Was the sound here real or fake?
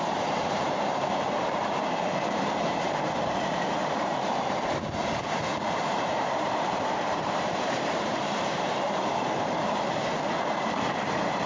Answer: fake